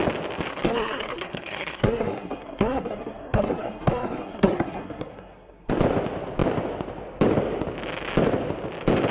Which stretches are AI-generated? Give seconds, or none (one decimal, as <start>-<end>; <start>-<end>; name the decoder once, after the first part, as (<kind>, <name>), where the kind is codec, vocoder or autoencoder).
0.5-5.7 (codec, SNAC)